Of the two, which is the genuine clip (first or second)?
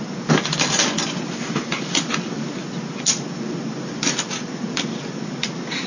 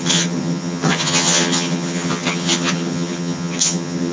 first